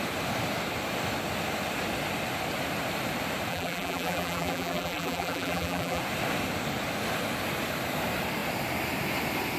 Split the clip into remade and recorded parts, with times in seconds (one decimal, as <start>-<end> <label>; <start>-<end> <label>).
0.0-3.5 recorded; 3.5-6.0 remade; 6.0-9.6 recorded